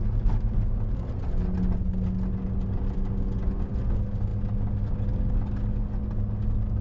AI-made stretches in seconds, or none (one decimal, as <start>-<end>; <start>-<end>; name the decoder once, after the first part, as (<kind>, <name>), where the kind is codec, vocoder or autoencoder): none